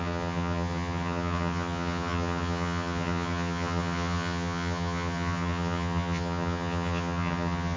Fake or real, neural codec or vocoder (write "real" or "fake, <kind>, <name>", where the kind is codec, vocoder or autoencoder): fake, vocoder, HiFi-GAN